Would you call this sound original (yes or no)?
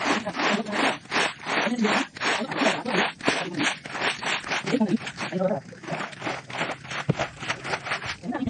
yes